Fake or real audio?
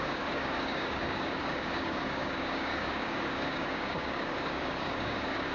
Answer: fake